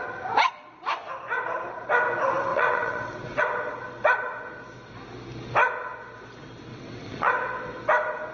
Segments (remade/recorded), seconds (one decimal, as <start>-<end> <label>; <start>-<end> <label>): 0.0-2.5 recorded; 2.5-3.4 remade; 3.4-6.7 recorded; 6.7-7.3 remade; 7.3-8.3 recorded